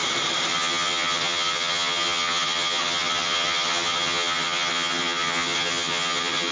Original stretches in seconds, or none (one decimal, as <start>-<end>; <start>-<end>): 0.0-0.5

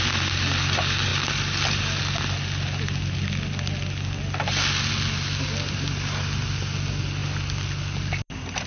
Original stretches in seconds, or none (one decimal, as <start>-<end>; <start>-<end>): 0.0-8.7

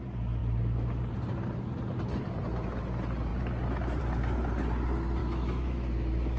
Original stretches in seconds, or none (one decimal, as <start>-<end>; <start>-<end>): 0.0-5.2

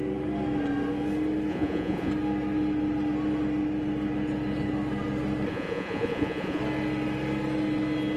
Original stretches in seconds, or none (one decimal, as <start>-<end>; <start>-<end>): 0.0-1.5; 2.1-5.5; 6.6-8.2

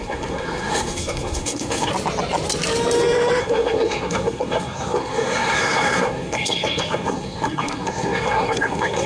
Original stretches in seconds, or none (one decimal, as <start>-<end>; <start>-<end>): 1.9-3.4

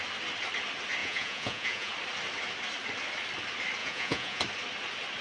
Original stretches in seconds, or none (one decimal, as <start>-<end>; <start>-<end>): 0.0-1.0; 1.9-3.8; 4.4-5.2

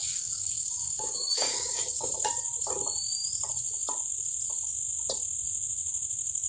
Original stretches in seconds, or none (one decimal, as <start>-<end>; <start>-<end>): 2.1-6.5

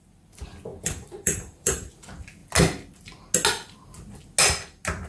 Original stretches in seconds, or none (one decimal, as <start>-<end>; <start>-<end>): 0.0-0.7; 1.9-5.1